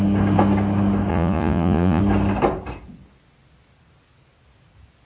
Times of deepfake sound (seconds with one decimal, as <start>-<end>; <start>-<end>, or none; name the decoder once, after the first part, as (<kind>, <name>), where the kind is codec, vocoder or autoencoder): 1.1-2.0 (vocoder, Vocos)